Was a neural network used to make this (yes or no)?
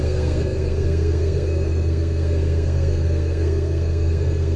yes